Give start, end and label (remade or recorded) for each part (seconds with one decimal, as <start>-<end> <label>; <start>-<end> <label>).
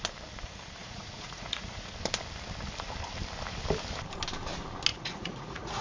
0.0-0.8 recorded; 0.8-1.9 remade; 1.9-4.9 recorded; 4.9-5.8 remade